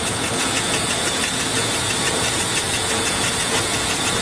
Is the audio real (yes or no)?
no